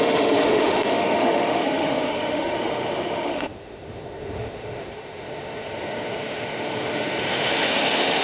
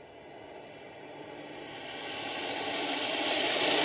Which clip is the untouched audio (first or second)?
second